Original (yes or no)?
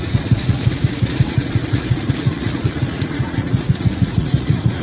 no